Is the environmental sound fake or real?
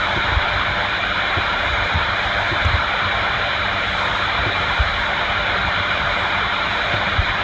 fake